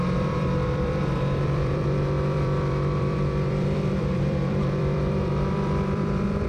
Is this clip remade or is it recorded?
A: remade